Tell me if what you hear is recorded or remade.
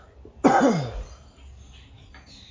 recorded